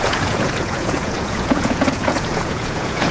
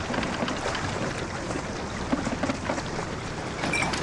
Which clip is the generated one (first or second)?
first